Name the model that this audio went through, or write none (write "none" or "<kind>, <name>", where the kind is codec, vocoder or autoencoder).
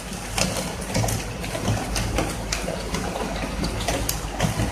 none